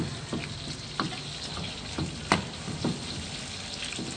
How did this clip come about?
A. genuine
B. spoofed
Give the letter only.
A